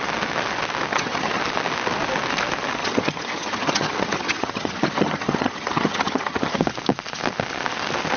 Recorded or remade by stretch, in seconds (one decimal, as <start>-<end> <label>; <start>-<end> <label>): 0.0-0.9 recorded; 0.9-1.4 remade; 1.4-2.8 recorded; 2.8-6.6 remade; 6.6-8.2 recorded